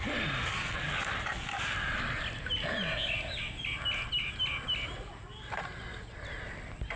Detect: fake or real real